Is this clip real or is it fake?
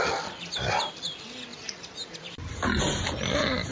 real